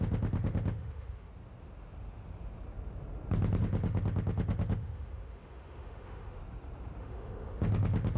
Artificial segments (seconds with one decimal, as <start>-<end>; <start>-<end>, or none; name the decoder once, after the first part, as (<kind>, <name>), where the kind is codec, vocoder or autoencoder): 0.0-1.3 (autoencoder, DAC-VAE); 3.6-6.4; 7.0-8.2